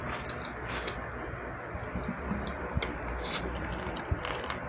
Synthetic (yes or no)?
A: no